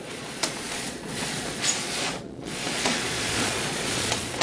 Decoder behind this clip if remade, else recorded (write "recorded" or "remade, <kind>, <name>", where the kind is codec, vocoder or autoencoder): remade, vocoder, Vocos